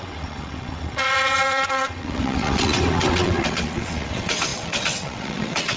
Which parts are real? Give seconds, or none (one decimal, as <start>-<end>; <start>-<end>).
none